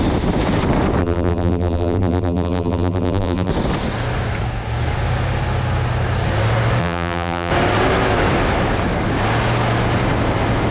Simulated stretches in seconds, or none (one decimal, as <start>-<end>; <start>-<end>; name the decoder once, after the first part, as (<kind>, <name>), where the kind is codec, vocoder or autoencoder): 1.0-3.5 (vocoder, BigVGAN v2); 6.8-7.5